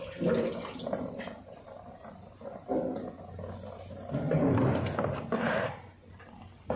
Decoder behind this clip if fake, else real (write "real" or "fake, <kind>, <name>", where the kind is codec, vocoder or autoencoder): real